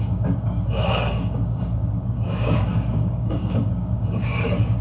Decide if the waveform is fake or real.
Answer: fake